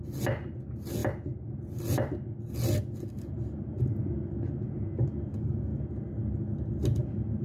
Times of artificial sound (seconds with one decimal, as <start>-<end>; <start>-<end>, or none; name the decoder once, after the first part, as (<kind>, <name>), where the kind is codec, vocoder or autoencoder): none